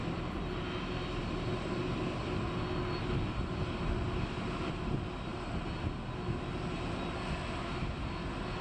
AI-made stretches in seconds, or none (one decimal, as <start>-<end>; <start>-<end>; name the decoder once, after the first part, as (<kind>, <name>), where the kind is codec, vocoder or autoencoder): none